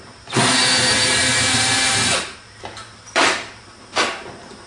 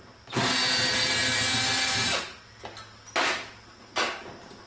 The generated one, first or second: first